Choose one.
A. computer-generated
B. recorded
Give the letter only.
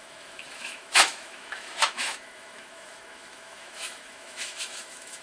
A